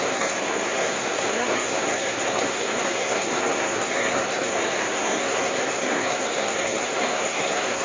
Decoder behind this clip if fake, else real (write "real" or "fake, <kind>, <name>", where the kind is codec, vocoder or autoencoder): fake, codec, SNAC